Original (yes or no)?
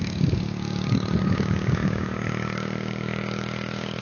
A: no